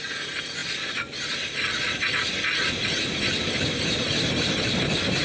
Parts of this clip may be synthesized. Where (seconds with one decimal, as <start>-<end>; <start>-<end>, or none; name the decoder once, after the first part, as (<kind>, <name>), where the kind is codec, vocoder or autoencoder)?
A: none